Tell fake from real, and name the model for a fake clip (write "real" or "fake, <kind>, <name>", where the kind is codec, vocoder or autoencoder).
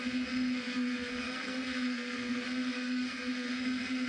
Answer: fake, codec, SNAC